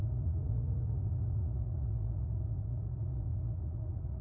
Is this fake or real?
fake